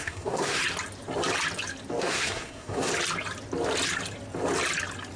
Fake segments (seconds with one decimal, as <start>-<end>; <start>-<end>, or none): 0.0-0.6; 2.0-2.9